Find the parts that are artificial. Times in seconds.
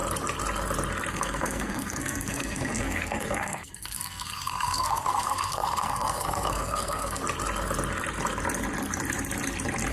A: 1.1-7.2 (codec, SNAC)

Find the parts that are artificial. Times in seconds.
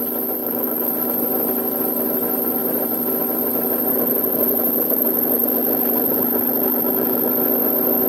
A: 0.4-0.9 (autoencoder, DAC-VAE); 3.9-7.3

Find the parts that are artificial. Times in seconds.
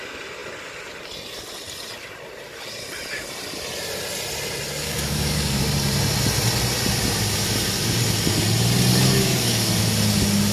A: 4.8-5.6 (codec, DAC); 8.9-9.8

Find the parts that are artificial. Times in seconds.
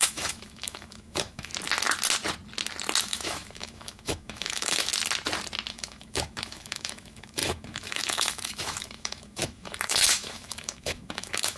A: 0.0-1.5 (autoencoder, DAC-VAE); 3.0-4.9; 5.7-11.6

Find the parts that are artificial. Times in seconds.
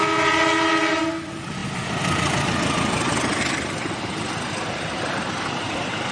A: none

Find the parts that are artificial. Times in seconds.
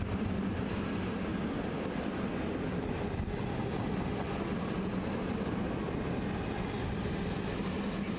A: none